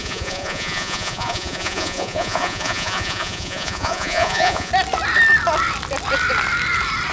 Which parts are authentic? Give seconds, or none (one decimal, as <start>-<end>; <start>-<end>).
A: 4.7-7.1